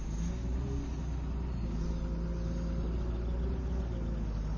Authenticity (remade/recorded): recorded